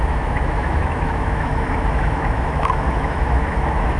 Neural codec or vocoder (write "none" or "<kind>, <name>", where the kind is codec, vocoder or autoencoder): autoencoder, DAC-VAE